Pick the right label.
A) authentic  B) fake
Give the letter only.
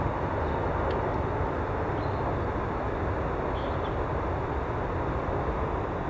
A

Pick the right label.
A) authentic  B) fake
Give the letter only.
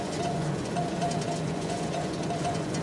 B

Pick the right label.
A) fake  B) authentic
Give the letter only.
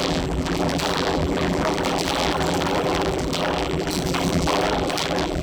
A